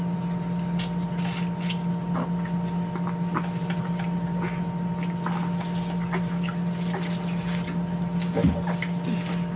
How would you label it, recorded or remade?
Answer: recorded